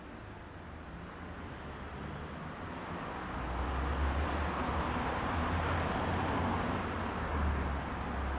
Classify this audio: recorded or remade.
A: recorded